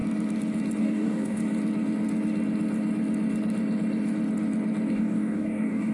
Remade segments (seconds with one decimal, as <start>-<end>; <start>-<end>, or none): 0.8-1.4; 4.9-5.9